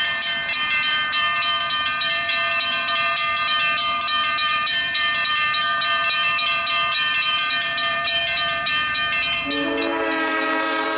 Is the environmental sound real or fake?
fake